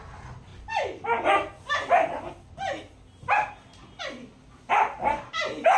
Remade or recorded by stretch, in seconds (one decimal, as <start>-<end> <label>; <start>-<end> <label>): 0.0-5.8 recorded